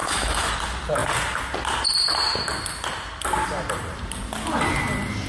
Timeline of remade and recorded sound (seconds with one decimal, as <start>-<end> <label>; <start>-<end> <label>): 0.0-0.5 remade; 0.5-5.3 recorded